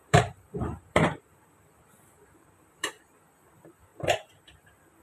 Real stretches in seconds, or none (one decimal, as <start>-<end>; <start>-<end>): 3.0-3.9; 4.6-5.0